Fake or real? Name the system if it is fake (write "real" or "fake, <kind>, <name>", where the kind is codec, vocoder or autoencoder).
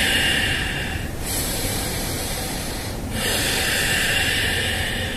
fake, vocoder, BigVGAN v2